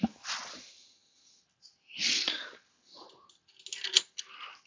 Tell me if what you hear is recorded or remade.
recorded